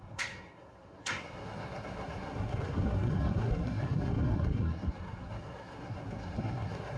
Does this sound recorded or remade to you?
remade